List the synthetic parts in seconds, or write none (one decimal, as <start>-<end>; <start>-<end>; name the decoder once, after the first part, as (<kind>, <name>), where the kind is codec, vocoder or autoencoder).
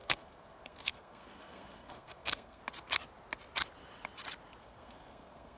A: 0.0-2.6 (codec, SNAC); 4.6-5.6